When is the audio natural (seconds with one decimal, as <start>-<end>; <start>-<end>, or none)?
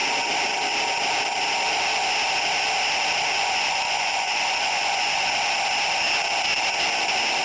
0.0-3.4; 5.3-7.4